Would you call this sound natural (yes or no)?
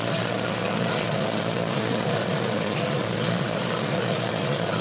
no